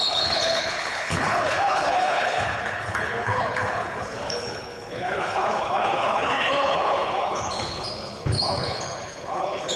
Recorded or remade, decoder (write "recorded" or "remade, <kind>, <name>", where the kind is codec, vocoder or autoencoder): remade, codec, HILCodec